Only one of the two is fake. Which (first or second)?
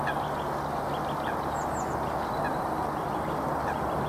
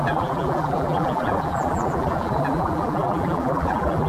second